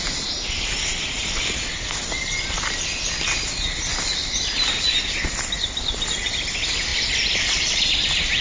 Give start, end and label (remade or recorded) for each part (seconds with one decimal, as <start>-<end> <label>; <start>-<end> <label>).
0.0-8.4 recorded